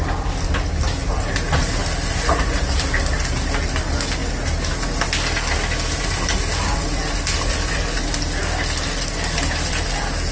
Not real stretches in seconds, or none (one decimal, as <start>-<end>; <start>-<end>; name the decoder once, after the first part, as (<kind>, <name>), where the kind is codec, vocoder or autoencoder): 1.0-1.8 (vocoder, BigVGAN v2)